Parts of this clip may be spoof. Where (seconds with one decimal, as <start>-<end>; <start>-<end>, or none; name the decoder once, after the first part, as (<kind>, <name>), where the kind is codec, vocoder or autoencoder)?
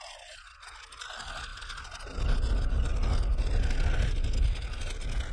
none